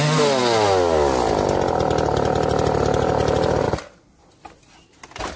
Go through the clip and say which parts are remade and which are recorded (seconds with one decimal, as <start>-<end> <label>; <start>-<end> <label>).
0.0-5.4 recorded